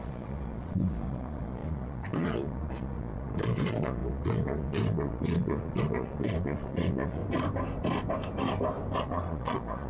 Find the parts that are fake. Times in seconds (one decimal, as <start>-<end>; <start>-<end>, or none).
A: 0.0-7.2; 9.0-9.9